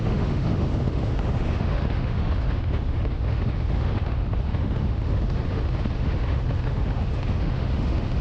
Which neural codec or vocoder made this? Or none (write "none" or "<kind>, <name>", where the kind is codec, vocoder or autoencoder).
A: autoencoder, DAC-VAE